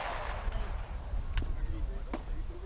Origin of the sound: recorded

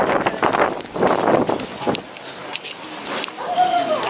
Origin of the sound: recorded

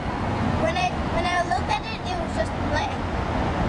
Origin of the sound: remade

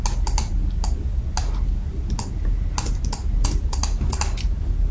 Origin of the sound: recorded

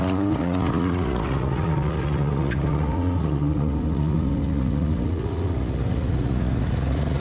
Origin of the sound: remade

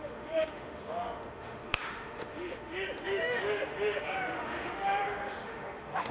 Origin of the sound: remade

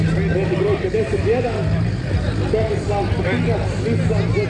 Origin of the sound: recorded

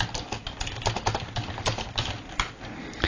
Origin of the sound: recorded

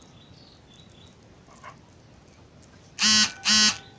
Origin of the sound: recorded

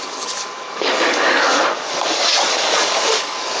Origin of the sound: remade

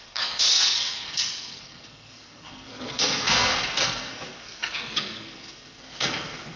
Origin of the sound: remade